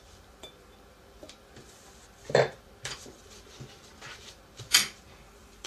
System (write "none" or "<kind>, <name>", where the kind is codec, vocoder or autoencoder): vocoder, BigVGAN v2